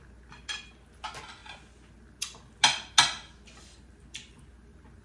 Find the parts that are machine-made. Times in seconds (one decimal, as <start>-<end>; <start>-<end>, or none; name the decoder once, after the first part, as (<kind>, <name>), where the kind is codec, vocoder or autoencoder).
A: none